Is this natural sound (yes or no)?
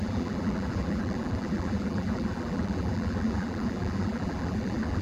no